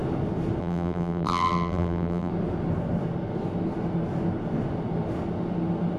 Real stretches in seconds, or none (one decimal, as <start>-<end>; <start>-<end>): 0.0-0.6; 2.3-6.0